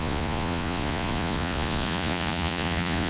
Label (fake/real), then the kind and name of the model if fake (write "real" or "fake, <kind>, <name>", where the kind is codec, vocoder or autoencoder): fake, vocoder, Vocos